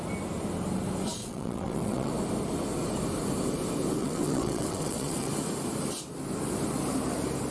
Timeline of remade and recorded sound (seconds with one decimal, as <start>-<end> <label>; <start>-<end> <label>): 0.0-1.2 recorded; 1.2-2.1 remade; 2.1-4.0 recorded; 4.0-5.3 remade; 5.3-7.5 recorded